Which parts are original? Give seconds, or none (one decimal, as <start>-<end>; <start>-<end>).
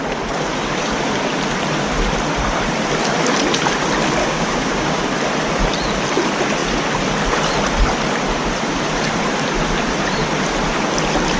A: 0.0-4.2; 5.0-11.4